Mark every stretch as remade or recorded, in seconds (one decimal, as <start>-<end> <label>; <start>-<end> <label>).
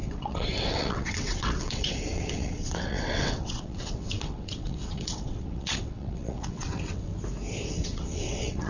0.0-7.1 remade; 7.1-7.7 recorded; 7.7-8.7 remade